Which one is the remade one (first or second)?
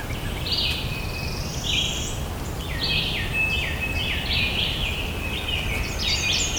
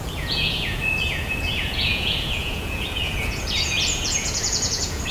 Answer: second